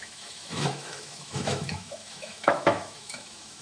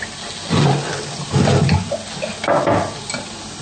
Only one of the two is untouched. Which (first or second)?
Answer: second